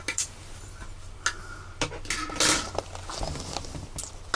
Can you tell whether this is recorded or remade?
recorded